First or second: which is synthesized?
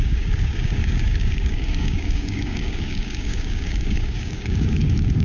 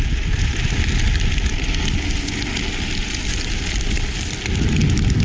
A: first